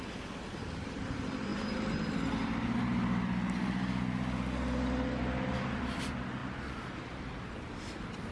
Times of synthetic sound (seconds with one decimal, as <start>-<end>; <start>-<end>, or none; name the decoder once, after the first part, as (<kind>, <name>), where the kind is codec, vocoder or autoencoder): none